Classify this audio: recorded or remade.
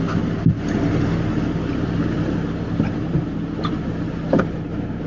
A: recorded